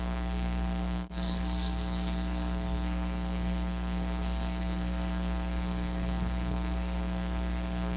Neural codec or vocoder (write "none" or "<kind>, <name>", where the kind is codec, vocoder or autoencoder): codec, SNAC